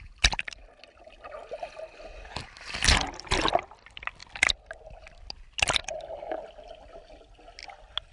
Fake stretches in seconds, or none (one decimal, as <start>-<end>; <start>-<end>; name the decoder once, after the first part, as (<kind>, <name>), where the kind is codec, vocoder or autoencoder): none